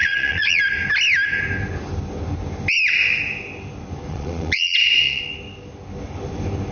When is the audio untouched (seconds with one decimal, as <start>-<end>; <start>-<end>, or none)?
0.6-4.1; 5.2-6.7